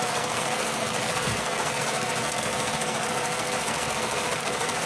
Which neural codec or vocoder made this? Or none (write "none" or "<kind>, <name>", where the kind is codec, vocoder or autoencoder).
codec, SNAC